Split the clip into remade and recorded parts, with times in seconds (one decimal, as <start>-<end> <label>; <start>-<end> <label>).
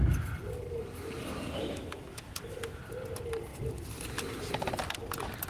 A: 0.0-1.6 recorded; 1.6-2.8 remade; 2.8-5.5 recorded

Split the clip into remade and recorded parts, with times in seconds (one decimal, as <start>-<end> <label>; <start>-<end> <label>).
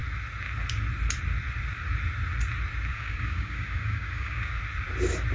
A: 0.0-2.9 recorded; 2.9-4.6 remade; 4.6-5.3 recorded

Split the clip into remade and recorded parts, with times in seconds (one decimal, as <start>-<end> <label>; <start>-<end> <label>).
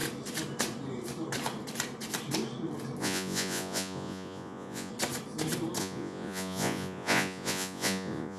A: 0.0-3.0 recorded; 3.0-4.9 remade; 4.9-5.8 recorded; 5.8-8.4 remade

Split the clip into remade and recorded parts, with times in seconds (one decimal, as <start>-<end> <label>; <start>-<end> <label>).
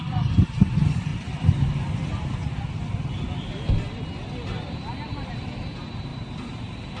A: 0.0-7.0 recorded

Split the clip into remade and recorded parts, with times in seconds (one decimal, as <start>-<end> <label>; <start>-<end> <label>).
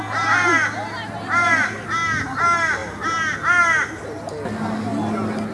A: 0.0-5.5 recorded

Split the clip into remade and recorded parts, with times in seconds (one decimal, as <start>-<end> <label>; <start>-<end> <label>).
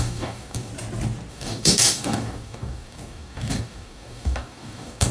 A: 0.0-0.7 remade; 0.7-1.3 recorded; 1.3-5.1 remade